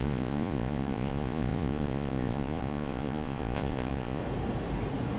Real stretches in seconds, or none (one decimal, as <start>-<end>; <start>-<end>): 4.2-5.2